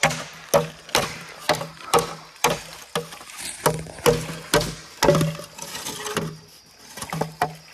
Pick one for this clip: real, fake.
real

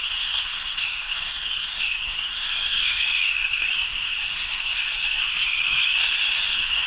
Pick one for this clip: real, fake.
fake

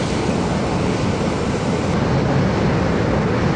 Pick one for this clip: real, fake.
real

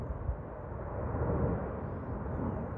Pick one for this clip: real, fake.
real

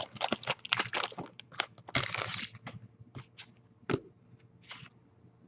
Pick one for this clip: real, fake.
real